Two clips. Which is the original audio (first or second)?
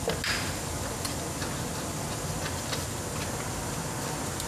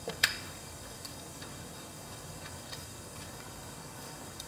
first